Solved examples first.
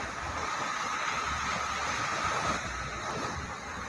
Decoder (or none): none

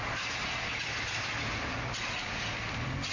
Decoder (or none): none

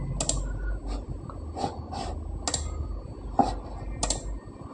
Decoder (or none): none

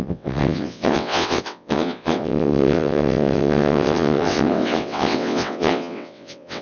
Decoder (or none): vocoder, WaveNeXt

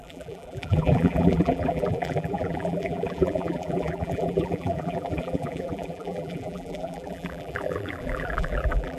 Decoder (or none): vocoder, BigVGAN v2